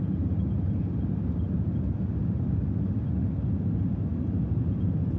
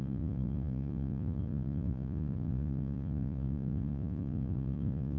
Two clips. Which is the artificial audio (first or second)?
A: second